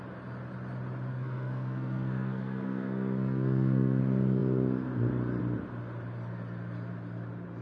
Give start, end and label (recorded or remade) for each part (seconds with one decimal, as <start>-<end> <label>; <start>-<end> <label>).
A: 0.0-1.1 recorded; 1.1-4.0 remade; 4.0-7.6 recorded